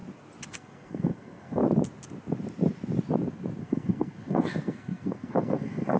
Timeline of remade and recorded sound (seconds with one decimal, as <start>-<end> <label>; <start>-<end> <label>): 0.0-0.5 recorded; 0.5-1.6 remade; 1.6-3.6 recorded; 3.6-6.0 remade